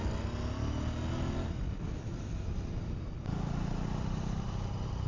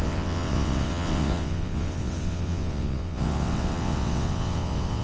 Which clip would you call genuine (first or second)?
first